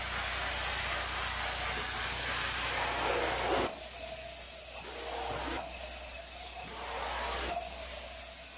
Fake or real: real